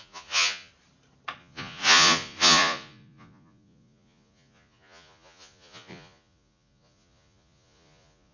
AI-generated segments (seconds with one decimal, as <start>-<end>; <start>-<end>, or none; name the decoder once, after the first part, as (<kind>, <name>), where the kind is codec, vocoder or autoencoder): 0.0-0.7 (vocoder, Vocos); 1.4-8.3